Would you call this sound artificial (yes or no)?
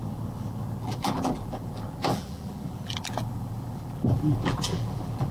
yes